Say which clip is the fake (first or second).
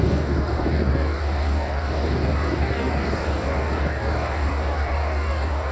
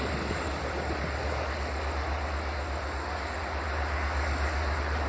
first